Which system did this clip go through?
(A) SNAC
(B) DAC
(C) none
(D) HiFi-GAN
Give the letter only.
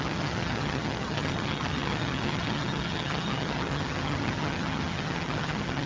D